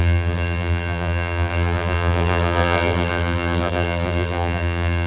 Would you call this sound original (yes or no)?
no